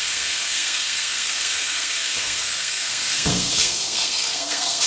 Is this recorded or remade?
remade